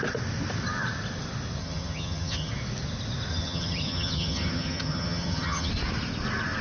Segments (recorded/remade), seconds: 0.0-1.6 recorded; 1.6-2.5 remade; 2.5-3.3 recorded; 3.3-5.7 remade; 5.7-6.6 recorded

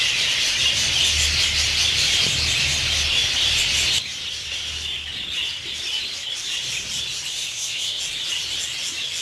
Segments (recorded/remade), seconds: 0.0-7.3 recorded; 7.3-8.0 remade; 8.0-9.2 recorded

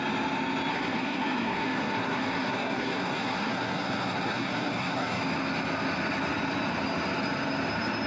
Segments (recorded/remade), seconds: 0.0-0.7 recorded; 0.7-5.2 remade; 5.2-8.1 recorded

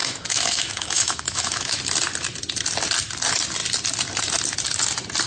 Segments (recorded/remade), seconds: 0.0-1.8 remade; 1.8-5.3 recorded

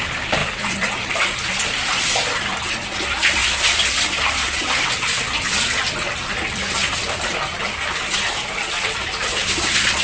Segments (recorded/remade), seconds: 0.0-10.0 recorded

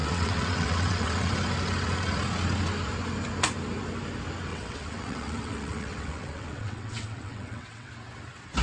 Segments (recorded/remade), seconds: 0.0-1.3 remade; 1.3-4.5 recorded; 4.5-7.9 remade; 7.9-8.6 recorded

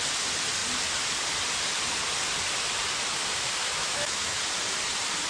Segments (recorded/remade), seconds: 0.0-3.6 recorded; 3.6-4.4 remade; 4.4-5.3 recorded